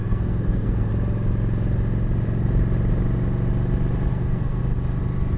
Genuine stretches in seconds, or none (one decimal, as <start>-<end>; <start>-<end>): 0.9-4.1; 4.6-5.4